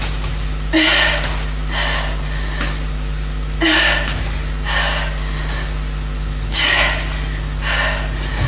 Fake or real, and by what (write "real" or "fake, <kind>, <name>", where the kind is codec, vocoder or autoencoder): real